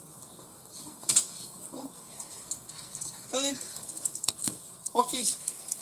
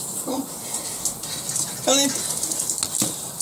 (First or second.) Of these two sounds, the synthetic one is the first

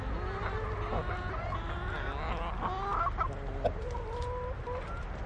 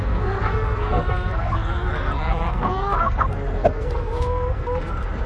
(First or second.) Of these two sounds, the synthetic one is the second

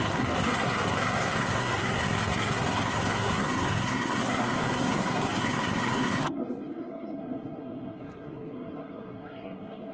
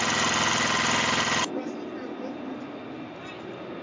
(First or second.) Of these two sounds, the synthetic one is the first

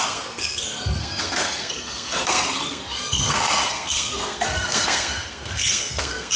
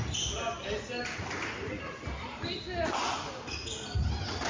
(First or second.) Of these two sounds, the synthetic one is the first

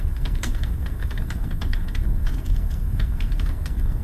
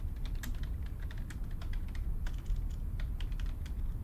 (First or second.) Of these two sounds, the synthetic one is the first